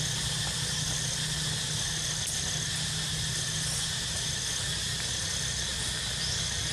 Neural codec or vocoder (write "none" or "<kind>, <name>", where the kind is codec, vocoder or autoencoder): none